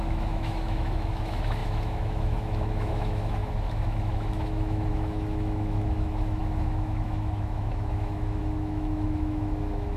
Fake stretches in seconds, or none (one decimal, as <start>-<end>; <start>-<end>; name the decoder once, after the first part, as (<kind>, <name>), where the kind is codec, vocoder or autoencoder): 0.0-10.0 (autoencoder, DAC-VAE)